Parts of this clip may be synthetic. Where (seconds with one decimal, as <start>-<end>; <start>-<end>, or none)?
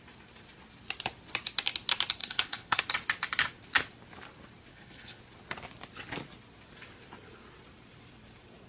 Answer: 2.2-2.8; 4.7-5.2